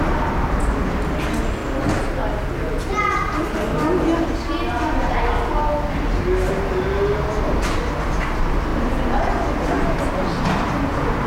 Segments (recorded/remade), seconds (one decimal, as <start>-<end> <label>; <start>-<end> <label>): 0.0-11.3 recorded